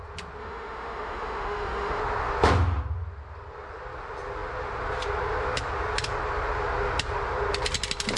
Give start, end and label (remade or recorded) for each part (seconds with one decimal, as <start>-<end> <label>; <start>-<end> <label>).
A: 0.0-0.4 recorded; 0.4-2.0 remade; 2.0-8.2 recorded